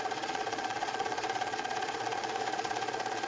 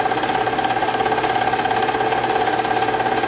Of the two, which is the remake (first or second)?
first